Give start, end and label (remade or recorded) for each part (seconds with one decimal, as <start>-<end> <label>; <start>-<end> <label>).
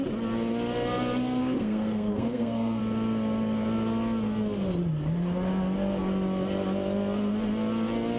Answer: 0.0-1.4 recorded; 1.4-2.8 remade; 2.8-8.2 recorded